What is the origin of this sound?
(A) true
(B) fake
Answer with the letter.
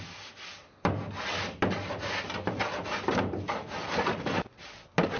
A